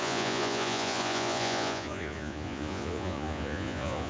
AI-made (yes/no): yes